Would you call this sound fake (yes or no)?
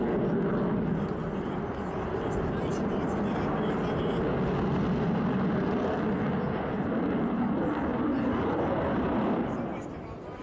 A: no